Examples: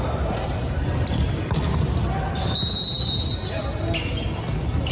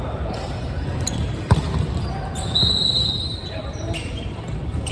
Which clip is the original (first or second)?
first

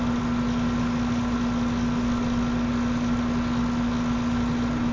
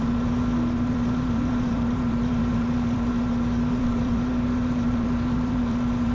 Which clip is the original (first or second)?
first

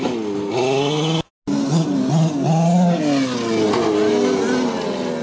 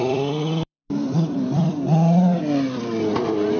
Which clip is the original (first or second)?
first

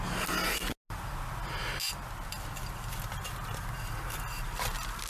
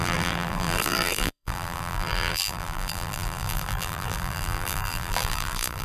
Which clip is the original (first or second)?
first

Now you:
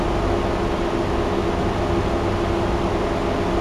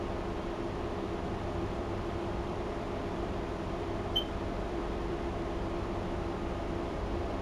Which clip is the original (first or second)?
first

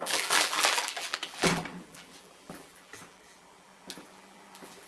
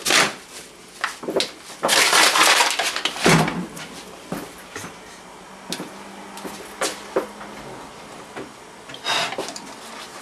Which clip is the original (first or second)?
second